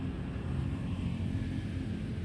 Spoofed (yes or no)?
no